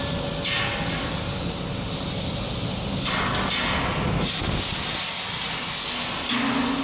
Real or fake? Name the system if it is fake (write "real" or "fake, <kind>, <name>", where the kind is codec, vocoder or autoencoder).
real